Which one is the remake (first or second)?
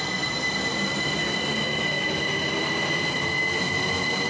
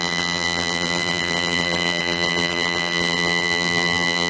second